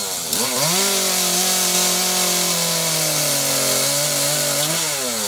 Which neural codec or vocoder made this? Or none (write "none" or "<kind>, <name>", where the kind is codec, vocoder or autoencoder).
none